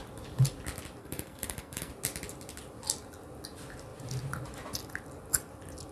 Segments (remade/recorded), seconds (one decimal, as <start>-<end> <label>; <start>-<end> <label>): 0.0-1.0 recorded; 1.0-1.9 remade; 1.9-5.9 recorded